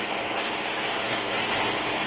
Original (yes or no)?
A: no